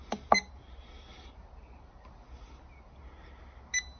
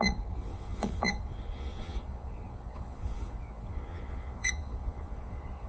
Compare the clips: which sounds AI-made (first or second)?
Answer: second